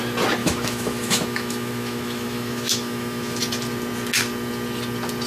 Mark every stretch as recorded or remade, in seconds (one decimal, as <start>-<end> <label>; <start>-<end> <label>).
0.0-0.4 recorded; 0.4-3.4 remade; 3.4-5.3 recorded